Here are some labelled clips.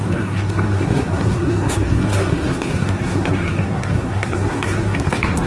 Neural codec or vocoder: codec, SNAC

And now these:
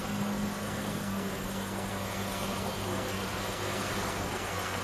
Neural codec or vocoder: codec, SNAC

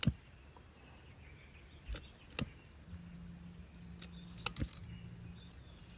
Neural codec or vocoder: none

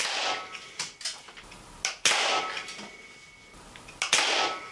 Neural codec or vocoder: none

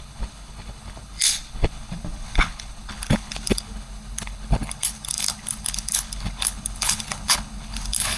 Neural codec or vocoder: codec, HILCodec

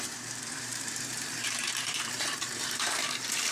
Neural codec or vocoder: vocoder, BigVGAN v2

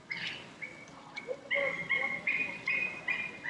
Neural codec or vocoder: none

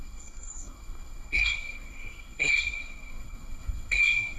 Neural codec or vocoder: codec, SNAC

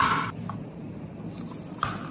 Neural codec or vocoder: none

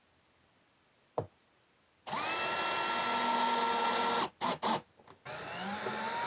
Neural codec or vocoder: none